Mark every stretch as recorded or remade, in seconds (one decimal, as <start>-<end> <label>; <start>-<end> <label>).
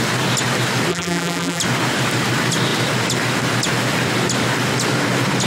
0.0-0.9 recorded; 0.9-1.6 remade; 1.6-5.5 recorded